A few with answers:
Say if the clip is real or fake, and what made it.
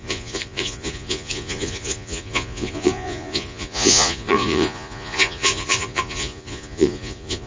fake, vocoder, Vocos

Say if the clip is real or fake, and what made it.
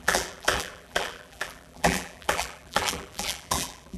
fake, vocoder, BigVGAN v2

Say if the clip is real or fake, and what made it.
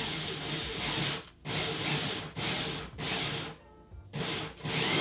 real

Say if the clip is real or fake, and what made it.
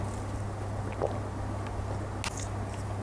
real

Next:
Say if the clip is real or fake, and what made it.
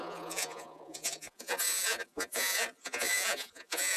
fake, vocoder, Vocos